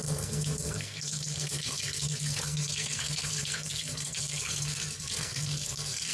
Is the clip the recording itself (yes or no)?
no